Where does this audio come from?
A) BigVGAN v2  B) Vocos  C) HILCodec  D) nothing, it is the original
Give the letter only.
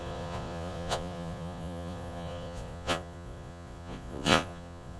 B